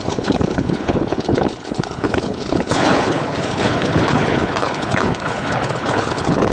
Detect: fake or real fake